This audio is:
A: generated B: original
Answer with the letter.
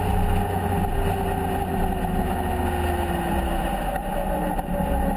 B